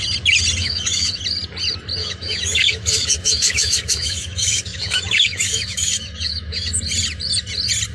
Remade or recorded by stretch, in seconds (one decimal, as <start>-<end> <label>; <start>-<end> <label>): 0.0-0.6 recorded; 0.6-1.2 remade; 1.2-2.0 recorded; 2.0-6.7 remade; 6.7-7.9 recorded